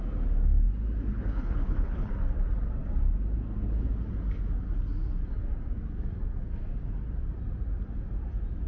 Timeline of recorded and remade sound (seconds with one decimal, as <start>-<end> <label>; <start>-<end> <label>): 0.0-1.1 recorded; 1.1-2.1 remade; 2.1-8.7 recorded

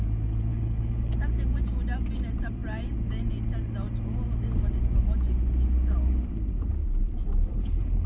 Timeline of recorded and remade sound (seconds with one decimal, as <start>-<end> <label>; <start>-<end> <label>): 0.0-0.5 recorded; 0.5-1.1 remade; 1.1-7.5 recorded; 7.5-8.1 remade